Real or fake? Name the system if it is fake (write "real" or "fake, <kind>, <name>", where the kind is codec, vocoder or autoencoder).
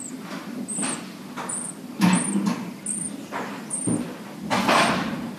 real